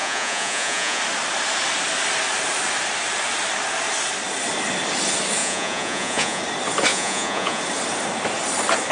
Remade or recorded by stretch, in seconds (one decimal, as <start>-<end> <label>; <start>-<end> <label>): 0.0-1.0 remade; 1.0-5.4 recorded; 5.4-6.4 remade; 6.4-6.9 recorded; 6.9-7.6 remade; 7.6-8.9 recorded